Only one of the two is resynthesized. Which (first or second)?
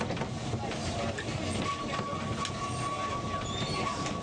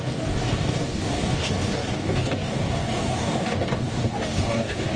second